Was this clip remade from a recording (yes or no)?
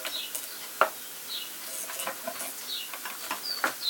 no